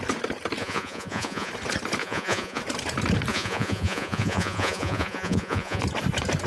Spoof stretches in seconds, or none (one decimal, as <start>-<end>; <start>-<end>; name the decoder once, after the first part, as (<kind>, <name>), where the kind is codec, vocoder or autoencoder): 0.6-1.5 (vocoder, Vocos); 2.0-2.6; 3.3-5.8